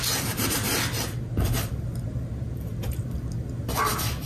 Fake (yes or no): no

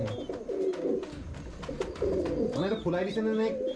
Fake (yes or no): no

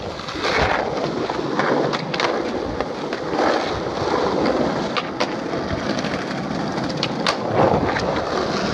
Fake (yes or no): no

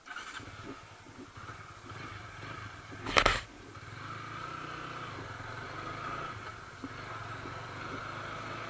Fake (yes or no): no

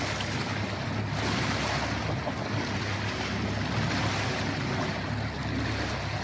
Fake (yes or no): no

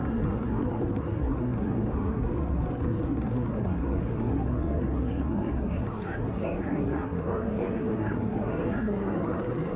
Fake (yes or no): yes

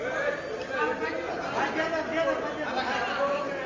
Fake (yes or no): no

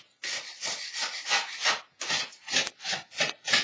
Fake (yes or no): no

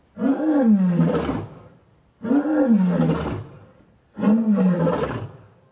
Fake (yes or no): no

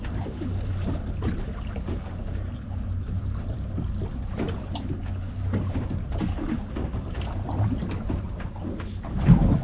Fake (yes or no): no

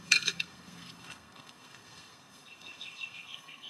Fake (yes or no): yes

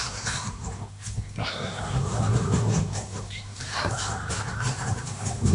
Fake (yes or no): yes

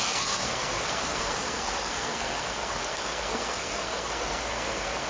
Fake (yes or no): yes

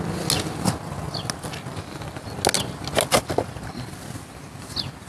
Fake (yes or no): no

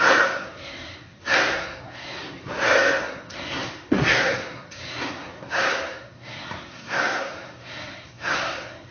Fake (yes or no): yes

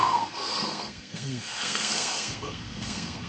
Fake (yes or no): yes